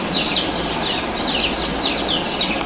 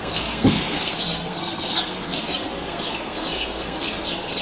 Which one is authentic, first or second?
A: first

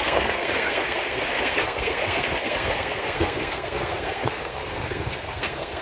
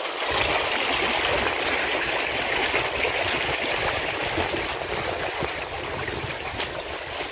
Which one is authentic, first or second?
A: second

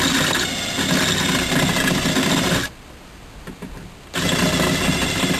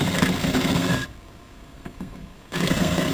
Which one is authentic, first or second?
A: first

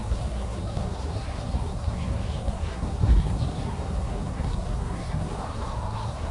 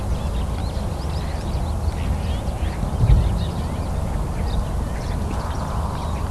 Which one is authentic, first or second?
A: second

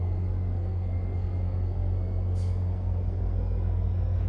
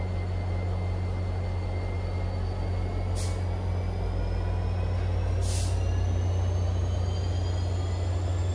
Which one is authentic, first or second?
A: second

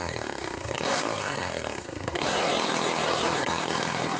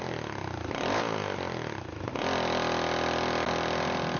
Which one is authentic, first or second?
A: second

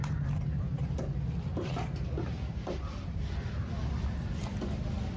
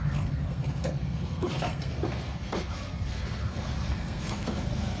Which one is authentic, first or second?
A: first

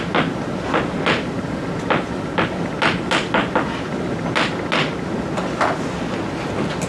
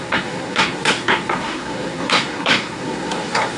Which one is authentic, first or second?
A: first